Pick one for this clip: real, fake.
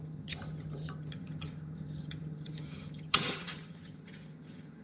fake